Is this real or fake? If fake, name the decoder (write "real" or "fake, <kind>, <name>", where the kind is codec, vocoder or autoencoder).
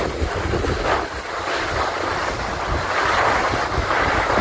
real